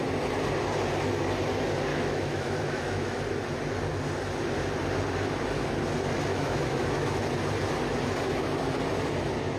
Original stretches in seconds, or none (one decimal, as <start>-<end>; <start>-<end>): 0.0-1.9; 3.2-6.3; 7.2-9.6